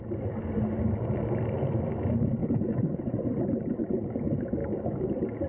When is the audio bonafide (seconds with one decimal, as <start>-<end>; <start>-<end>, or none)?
0.0-2.4; 3.0-4.6; 5.1-5.5